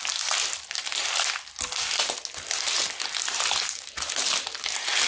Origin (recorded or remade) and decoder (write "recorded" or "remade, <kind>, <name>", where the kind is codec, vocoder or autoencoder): recorded